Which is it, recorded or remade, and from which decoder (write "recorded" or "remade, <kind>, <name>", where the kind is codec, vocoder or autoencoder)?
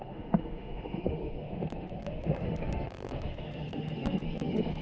remade, autoencoder, DAC-VAE